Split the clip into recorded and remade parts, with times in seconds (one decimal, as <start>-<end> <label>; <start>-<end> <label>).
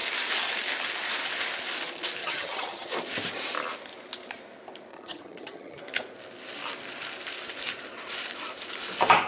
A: 0.0-2.2 recorded; 2.2-2.9 remade; 2.9-4.9 recorded; 4.9-5.8 remade; 5.8-9.3 recorded